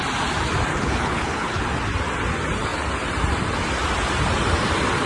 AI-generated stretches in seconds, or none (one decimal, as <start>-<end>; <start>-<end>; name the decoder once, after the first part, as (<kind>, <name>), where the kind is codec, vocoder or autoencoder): 0.7-1.6 (codec, HILCodec)